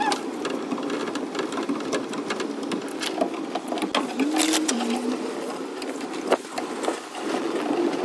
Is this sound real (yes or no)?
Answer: yes